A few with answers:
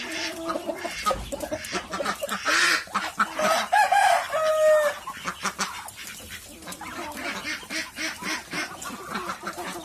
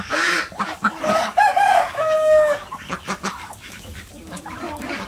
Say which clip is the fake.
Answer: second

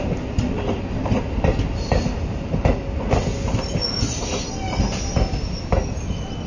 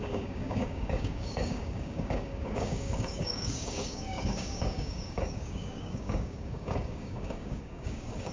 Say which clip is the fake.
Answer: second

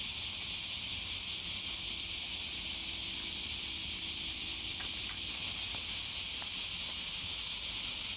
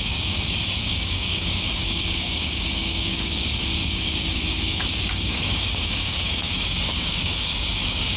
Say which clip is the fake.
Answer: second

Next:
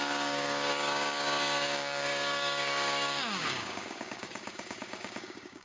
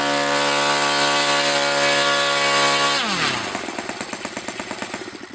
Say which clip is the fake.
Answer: first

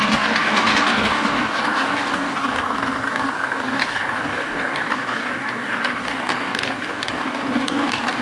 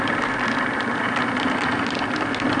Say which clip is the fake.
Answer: first